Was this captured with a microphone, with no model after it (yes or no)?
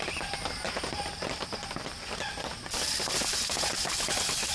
yes